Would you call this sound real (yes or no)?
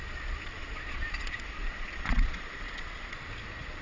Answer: no